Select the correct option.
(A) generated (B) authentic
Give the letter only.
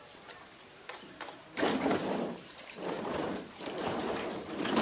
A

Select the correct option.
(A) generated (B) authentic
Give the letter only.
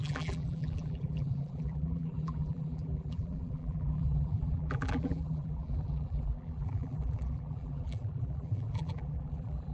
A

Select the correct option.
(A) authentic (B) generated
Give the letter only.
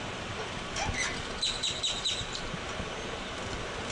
B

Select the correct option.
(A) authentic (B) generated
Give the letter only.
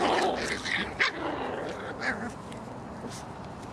A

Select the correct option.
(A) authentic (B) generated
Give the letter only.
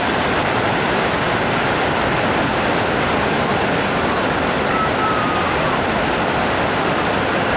B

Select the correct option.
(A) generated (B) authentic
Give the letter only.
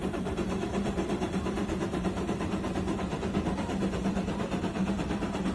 A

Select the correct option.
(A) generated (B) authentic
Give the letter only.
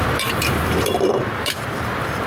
A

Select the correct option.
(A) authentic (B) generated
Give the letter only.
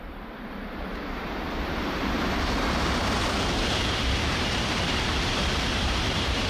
B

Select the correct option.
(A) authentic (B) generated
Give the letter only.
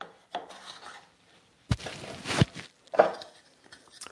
A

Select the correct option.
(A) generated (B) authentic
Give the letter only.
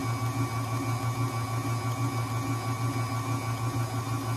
B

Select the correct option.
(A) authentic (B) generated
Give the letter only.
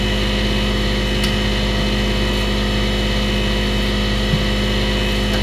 A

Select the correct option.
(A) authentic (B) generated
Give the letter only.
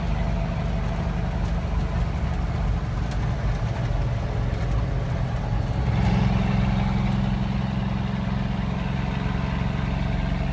A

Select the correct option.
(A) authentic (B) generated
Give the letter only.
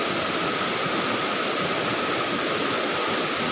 A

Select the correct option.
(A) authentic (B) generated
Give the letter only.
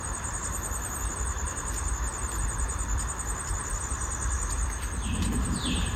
A